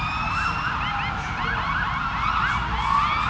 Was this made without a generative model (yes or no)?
yes